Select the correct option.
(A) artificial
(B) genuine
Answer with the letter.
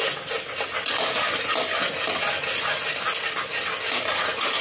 B